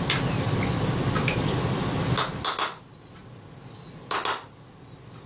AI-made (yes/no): no